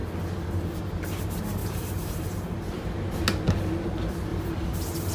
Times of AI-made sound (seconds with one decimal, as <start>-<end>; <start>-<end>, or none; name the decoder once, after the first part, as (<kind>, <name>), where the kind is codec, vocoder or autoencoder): 1.6-3.2 (vocoder, BigVGAN v2); 4.3-5.1